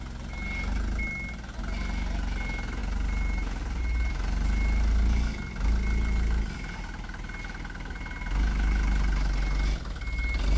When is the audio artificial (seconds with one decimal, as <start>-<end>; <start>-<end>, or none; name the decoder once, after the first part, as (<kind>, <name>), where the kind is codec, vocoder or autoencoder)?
none